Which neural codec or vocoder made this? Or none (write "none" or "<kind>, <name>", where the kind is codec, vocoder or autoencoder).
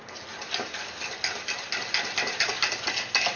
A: none